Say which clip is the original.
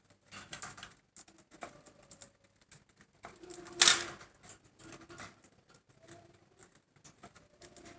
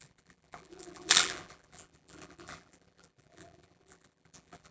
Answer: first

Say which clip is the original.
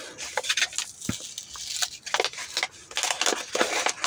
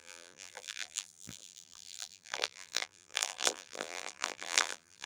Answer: first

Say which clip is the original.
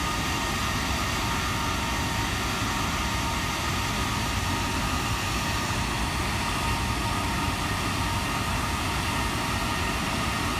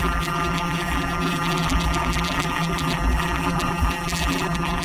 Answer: first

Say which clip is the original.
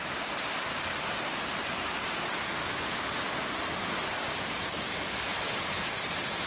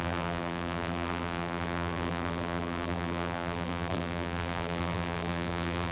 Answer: first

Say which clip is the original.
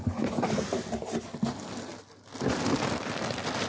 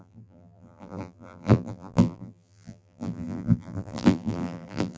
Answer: first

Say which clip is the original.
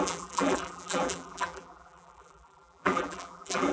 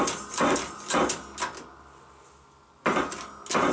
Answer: second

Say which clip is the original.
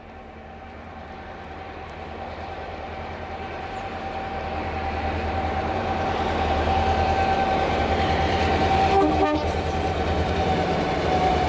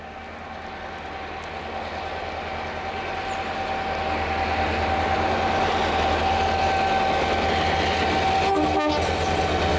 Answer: second